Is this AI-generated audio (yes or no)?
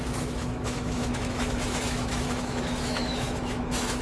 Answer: yes